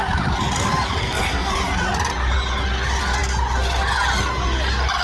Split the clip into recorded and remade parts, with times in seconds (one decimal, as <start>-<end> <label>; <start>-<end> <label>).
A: 0.0-1.0 recorded; 1.0-1.5 remade; 1.5-5.0 recorded